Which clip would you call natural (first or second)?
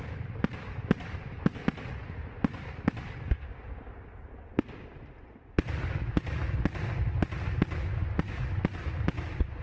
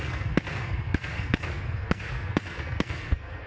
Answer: first